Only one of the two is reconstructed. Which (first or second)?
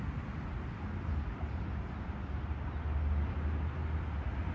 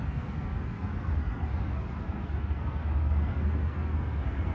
second